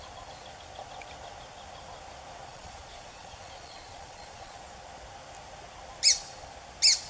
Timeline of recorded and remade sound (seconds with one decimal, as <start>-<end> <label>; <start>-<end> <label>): 0.0-2.5 recorded; 2.5-4.6 remade; 4.6-7.1 recorded